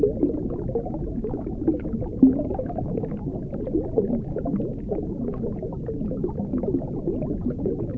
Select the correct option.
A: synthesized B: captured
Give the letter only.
B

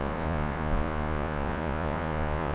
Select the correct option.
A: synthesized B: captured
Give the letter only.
A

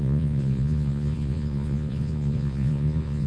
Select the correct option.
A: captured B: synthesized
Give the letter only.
B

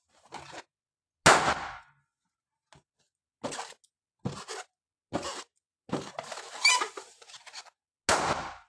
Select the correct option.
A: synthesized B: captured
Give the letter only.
B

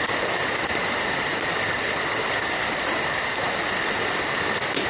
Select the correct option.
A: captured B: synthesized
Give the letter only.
A